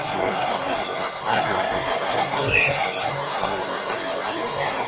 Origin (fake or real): fake